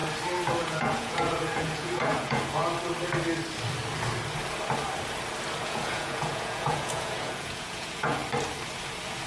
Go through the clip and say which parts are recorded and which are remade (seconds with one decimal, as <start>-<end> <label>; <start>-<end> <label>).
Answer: 0.0-0.6 recorded; 0.6-2.6 remade; 2.6-5.6 recorded; 5.6-8.2 remade; 8.2-9.3 recorded